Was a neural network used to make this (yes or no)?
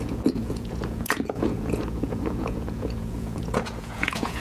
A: yes